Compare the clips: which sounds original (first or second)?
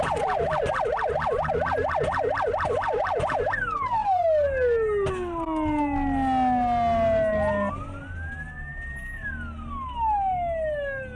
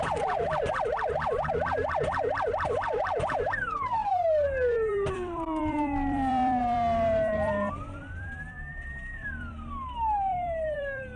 first